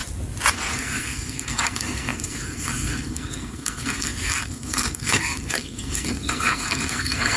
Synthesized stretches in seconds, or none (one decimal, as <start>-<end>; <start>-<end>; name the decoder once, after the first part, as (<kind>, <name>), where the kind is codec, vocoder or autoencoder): 0.5-7.4 (codec, SNAC)